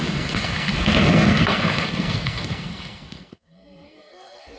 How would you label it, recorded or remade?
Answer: remade